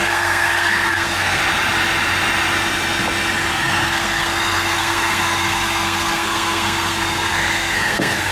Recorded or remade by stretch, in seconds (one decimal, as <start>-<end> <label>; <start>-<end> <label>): 0.0-1.4 remade; 1.4-3.5 recorded; 3.5-8.3 remade